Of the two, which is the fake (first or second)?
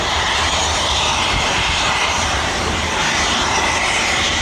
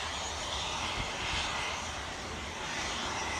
first